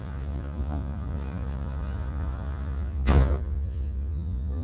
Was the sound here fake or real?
fake